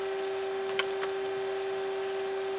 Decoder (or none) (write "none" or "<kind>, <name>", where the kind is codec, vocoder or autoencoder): none